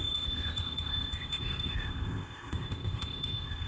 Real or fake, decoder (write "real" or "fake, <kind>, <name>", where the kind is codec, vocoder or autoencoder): fake, codec, ZipCodec